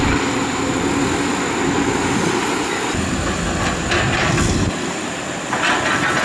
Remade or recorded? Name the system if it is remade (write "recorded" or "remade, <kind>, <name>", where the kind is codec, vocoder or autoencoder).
recorded